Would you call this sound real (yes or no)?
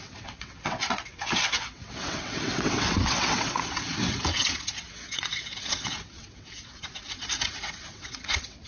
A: no